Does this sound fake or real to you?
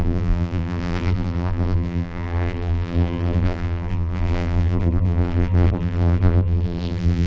fake